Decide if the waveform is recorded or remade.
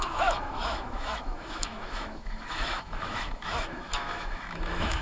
remade